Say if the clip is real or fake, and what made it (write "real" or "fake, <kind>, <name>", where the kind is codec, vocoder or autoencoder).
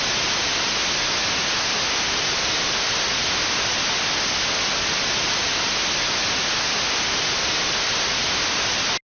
real